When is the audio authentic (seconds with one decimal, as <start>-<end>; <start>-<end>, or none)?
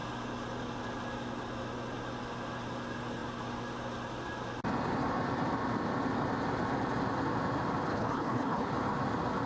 0.0-7.9; 8.7-9.5